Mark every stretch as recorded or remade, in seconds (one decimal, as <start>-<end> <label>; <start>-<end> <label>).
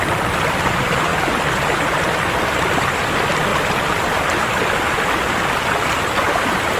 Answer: 0.0-1.1 remade; 1.1-2.4 recorded; 2.4-3.5 remade; 3.5-4.4 recorded; 4.4-6.8 remade